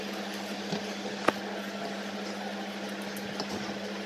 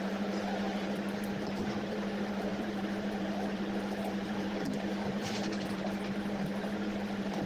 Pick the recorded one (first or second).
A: first